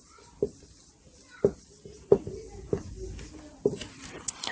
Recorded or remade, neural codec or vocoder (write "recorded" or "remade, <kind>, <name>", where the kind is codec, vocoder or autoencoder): recorded